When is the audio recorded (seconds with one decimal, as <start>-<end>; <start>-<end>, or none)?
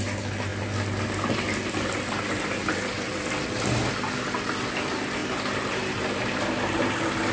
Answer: 0.0-7.3